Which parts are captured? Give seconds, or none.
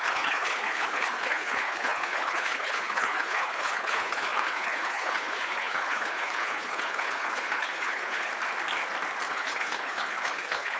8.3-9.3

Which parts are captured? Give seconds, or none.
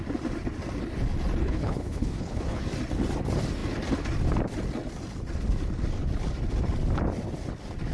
0.0-1.4; 2.6-7.9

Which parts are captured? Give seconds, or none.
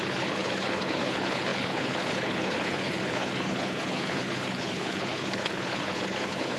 none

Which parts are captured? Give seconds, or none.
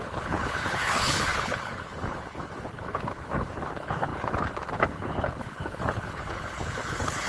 none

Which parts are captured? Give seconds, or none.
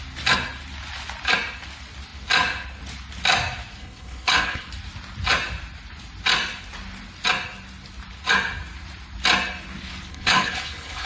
0.0-3.8; 4.7-10.1